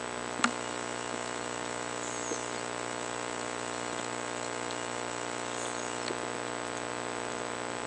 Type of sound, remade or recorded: recorded